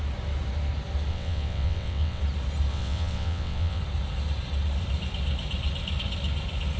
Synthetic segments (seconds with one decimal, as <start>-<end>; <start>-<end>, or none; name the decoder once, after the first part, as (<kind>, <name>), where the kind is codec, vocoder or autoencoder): 1.1-2.2 (vocoder, WaveNeXt); 2.7-3.8